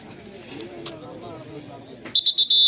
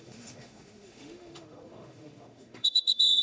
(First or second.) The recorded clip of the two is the first